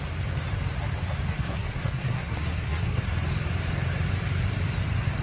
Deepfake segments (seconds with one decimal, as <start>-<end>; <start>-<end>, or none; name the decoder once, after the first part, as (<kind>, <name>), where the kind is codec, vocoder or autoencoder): 1.4-3.0 (codec, SNAC)